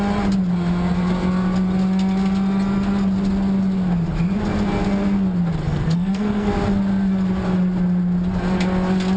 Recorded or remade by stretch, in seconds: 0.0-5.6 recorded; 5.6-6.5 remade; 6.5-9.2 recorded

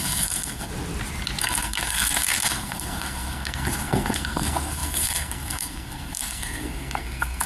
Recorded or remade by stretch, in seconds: 0.0-0.7 remade; 0.7-1.4 recorded; 1.4-7.5 remade

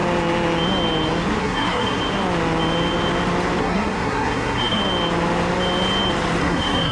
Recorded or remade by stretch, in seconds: 0.0-1.4 recorded; 1.4-2.0 remade; 2.0-3.6 recorded; 3.6-4.8 remade; 4.8-6.4 recorded; 6.4-6.9 remade

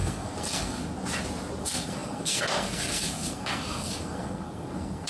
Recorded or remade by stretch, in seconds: 0.0-0.8 remade; 0.8-1.6 recorded; 1.6-5.1 remade

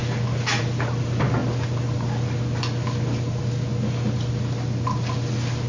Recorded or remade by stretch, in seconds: 0.0-5.7 recorded

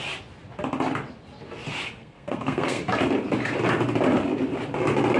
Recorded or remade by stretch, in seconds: 0.0-2.0 recorded; 2.0-2.8 remade; 2.8-5.2 recorded

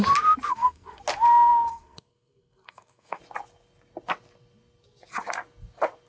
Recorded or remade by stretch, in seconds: 0.0-0.5 recorded; 0.5-1.0 remade; 1.0-1.7 recorded; 1.7-3.2 remade; 3.2-6.1 recorded